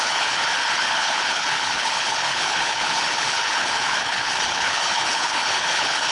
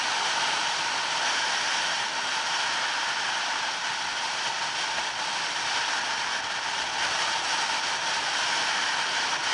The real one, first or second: second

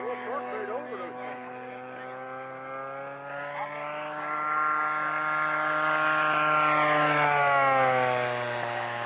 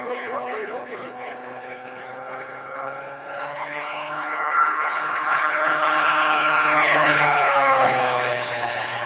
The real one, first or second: first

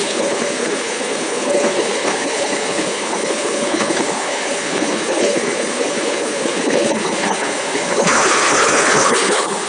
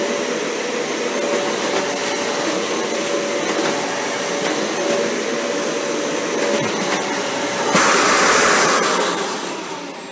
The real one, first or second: second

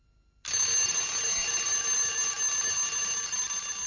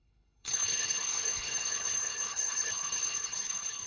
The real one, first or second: first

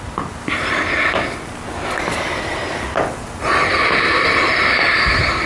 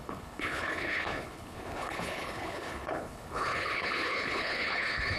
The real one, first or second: first